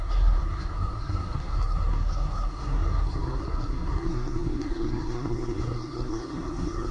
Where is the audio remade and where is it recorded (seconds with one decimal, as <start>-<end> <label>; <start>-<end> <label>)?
0.0-6.9 remade